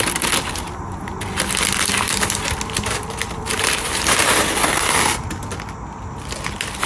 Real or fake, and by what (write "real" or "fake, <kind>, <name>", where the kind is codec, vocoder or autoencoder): real